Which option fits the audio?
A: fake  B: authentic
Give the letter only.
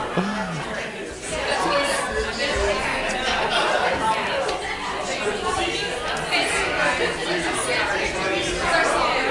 B